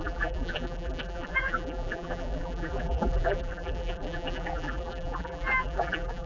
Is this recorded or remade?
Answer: remade